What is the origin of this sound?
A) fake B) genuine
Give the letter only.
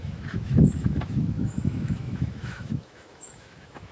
A